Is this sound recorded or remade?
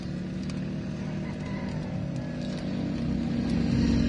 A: recorded